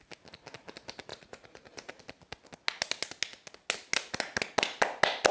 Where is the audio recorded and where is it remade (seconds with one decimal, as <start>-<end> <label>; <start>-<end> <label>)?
0.0-1.1 recorded; 1.1-2.0 remade; 2.0-5.3 recorded

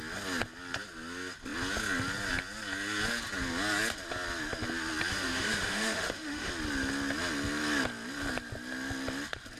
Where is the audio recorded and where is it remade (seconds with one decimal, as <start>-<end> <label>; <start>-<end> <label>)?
0.0-5.1 recorded; 5.1-6.5 remade; 6.5-9.6 recorded

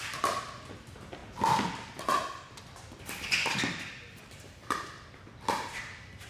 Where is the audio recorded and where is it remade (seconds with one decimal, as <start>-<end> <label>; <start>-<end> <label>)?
0.0-1.2 remade; 1.2-4.3 recorded; 4.3-6.3 remade

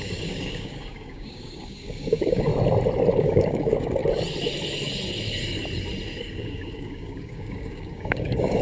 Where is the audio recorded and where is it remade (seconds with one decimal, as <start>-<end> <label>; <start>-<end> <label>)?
0.0-2.5 remade; 2.5-3.1 recorded; 3.1-4.0 remade; 4.0-6.2 recorded; 6.2-8.6 remade

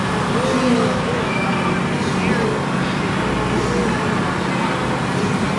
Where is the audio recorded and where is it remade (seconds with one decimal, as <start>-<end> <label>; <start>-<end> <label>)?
0.0-0.7 recorded; 0.7-1.5 remade; 1.5-5.6 recorded

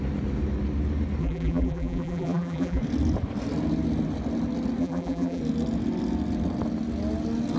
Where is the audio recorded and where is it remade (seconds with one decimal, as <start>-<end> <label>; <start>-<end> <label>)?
0.0-1.2 recorded; 1.2-2.8 remade; 2.8-4.8 recorded; 4.8-5.4 remade; 5.4-7.6 recorded